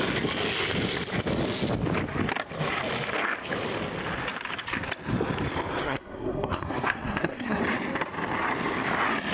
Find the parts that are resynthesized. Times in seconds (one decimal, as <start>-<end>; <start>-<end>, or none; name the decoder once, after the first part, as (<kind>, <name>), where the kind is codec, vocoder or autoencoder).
5.8-7.6 (codec, SNAC)